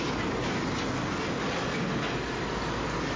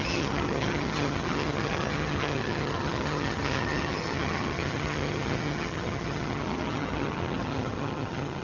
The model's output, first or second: second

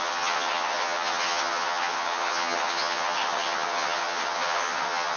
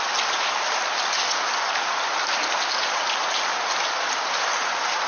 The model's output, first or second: first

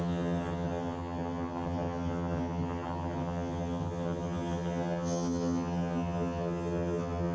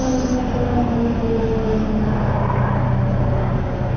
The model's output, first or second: first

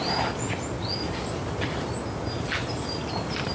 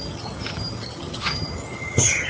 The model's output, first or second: second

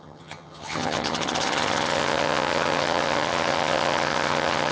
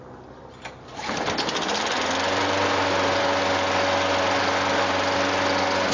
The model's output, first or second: first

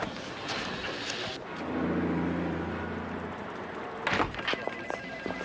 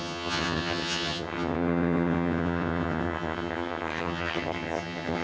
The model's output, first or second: second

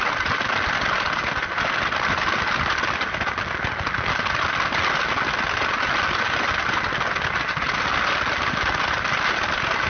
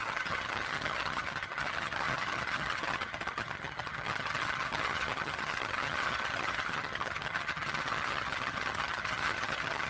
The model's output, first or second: second